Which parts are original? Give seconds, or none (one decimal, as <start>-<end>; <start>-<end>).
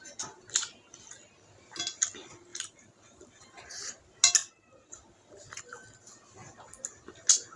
0.0-2.5; 4.0-7.6